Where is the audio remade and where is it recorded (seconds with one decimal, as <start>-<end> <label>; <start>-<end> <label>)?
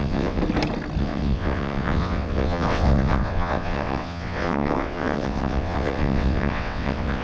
0.0-0.4 remade; 0.4-1.0 recorded; 1.0-7.2 remade